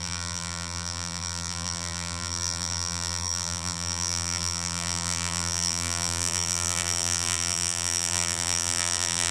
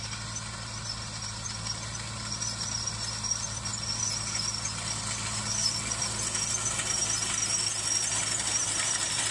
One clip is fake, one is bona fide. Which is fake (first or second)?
first